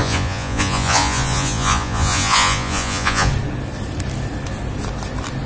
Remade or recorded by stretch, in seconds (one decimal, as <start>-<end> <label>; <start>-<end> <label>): 0.0-3.3 remade; 3.3-5.5 recorded